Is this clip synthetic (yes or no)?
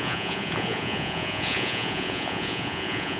yes